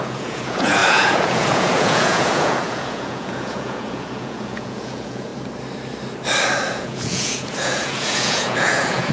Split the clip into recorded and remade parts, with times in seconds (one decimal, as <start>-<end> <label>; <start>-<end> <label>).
0.0-5.3 remade; 5.3-6.7 recorded; 6.7-9.1 remade